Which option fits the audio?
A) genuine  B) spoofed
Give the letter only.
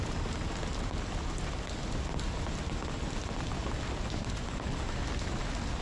A